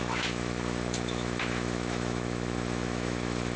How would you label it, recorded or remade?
remade